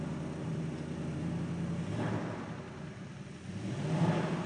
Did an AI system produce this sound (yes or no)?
no